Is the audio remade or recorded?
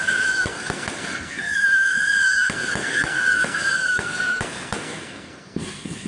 remade